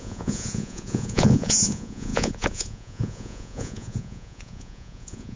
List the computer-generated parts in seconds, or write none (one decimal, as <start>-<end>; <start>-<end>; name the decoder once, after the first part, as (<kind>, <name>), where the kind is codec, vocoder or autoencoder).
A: 0.0-5.4 (vocoder, Vocos)